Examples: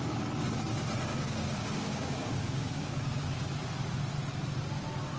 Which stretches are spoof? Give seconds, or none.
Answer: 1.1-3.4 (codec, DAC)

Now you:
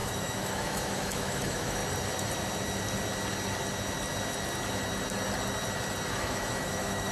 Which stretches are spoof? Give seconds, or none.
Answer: 0.0-1.8 (autoencoder, DAC-VAE); 6.1-7.1

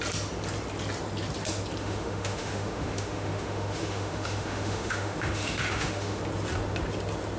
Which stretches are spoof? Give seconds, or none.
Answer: 1.8-6.2 (autoencoder, DAC-VAE)

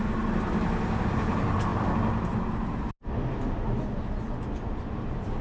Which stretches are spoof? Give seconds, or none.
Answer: none

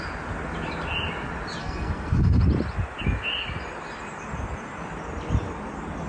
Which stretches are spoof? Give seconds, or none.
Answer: 1.6-2.4 (codec, SNAC)

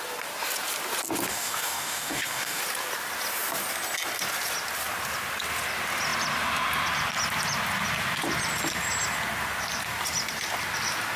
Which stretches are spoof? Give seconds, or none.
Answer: 1.3-2.6 (codec, DAC)